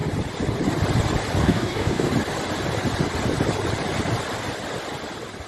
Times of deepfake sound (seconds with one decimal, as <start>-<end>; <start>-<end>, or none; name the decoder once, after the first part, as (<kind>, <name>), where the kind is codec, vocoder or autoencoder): 1.4-2.1 (codec, DAC)